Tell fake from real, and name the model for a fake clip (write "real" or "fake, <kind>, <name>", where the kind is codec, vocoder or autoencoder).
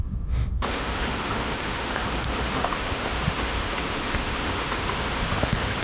fake, autoencoder, DAC-VAE